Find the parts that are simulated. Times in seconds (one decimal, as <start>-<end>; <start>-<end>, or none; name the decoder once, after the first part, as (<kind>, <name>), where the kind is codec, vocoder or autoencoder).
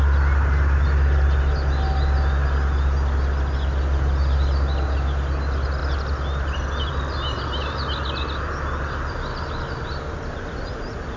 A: none